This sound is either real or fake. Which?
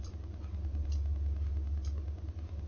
real